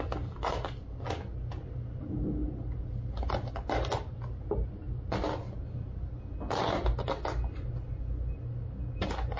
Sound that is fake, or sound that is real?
real